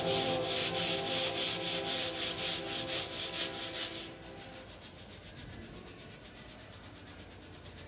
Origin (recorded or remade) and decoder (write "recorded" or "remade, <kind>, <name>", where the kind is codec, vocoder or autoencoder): recorded